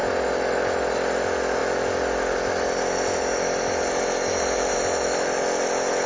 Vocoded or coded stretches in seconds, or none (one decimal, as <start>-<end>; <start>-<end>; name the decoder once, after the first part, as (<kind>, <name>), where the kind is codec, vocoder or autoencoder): none